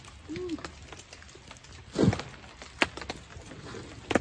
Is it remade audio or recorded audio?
recorded